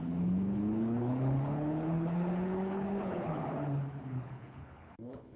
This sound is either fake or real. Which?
fake